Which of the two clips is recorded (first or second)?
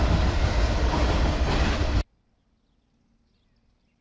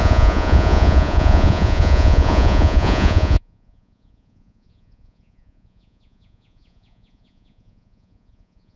first